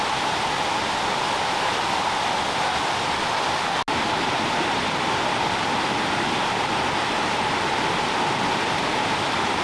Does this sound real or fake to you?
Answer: real